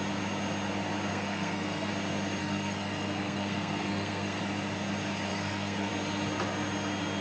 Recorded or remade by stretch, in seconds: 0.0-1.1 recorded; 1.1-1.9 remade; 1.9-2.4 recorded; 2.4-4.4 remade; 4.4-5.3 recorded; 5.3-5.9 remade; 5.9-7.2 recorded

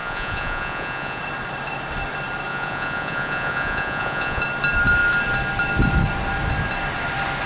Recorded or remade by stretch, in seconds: 0.0-1.2 remade; 1.2-2.5 recorded; 2.5-4.4 remade; 4.4-7.5 recorded

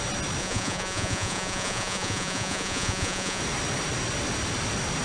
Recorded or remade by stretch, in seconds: 0.0-0.4 recorded; 0.4-3.4 remade; 3.4-5.0 recorded

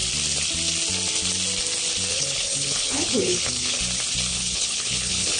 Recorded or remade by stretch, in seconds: 0.0-2.1 recorded; 2.1-3.8 remade; 3.8-4.3 recorded; 4.3-5.4 remade

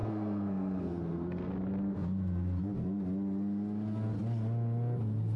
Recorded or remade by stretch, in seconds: 0.0-1.5 remade; 1.5-5.4 recorded

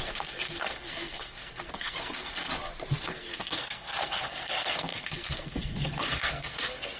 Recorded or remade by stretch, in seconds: 0.0-2.5 remade; 2.5-3.0 recorded; 3.0-7.0 remade

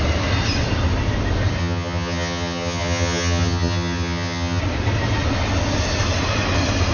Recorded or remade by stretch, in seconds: 0.0-1.6 recorded; 1.6-4.6 remade; 4.6-6.9 recorded

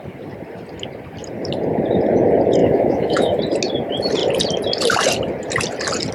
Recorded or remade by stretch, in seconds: 0.0-2.6 recorded; 2.6-3.4 remade; 3.4-6.1 recorded